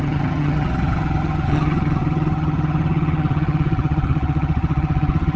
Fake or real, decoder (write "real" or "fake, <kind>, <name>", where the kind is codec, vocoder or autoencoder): fake, vocoder, HiFi-GAN